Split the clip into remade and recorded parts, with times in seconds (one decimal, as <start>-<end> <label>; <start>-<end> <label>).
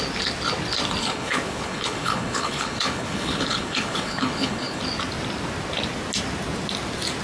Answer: 0.0-1.0 recorded; 1.0-4.8 remade; 4.8-7.2 recorded